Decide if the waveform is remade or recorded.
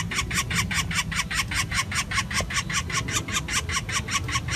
recorded